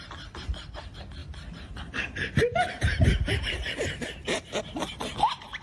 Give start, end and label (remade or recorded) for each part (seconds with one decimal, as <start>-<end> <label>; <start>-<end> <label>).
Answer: 0.0-1.2 recorded; 1.2-4.6 remade; 4.6-5.6 recorded